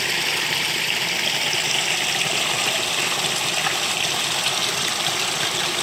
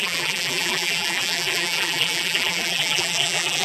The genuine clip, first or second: first